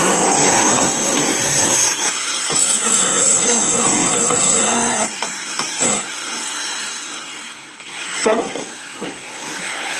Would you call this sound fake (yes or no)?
yes